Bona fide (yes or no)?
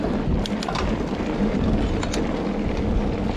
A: yes